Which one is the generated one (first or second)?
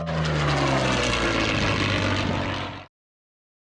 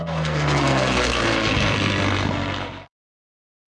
second